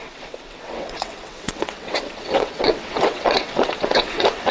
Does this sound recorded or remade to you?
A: remade